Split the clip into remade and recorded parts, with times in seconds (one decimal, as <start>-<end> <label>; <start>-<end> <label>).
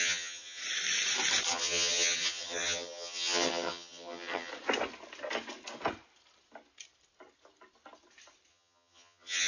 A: 0.0-0.6 remade; 0.6-1.5 recorded; 1.5-4.5 remade; 4.5-8.5 recorded; 8.5-9.5 remade